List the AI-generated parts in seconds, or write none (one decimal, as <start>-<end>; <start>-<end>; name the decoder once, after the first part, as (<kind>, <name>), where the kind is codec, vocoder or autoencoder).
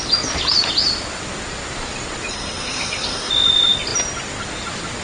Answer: 2.3-3.3 (codec, SNAC)